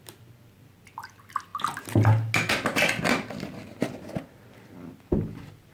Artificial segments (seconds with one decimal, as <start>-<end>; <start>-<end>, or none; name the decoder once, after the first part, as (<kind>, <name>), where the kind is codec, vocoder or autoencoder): none